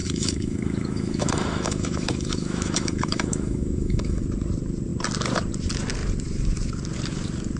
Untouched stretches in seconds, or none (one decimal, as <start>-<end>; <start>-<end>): 4.2-7.6